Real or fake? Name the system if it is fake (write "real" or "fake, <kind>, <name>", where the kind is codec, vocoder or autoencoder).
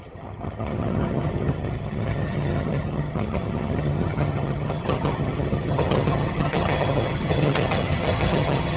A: fake, vocoder, HiFi-GAN